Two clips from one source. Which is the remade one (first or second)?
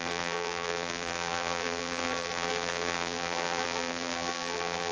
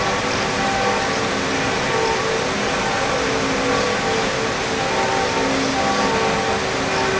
first